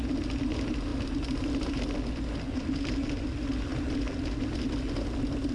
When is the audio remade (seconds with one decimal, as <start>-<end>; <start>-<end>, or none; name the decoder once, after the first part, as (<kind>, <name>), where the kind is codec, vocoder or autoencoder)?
0.9-1.7 (vocoder, BigVGAN v2)